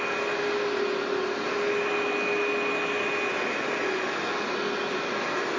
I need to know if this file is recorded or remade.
recorded